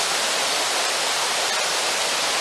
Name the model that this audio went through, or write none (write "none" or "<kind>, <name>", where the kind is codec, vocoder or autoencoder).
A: none